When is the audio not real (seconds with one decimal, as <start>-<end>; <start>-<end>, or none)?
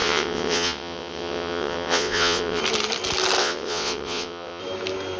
0.0-2.6; 3.4-4.6